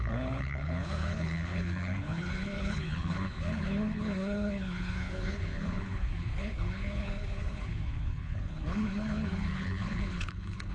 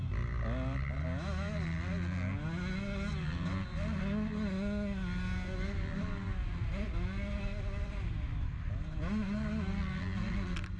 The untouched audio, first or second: second